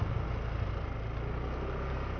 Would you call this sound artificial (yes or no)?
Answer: no